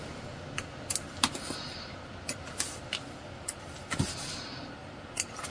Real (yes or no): yes